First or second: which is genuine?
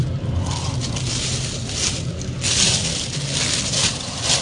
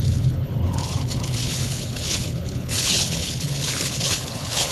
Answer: first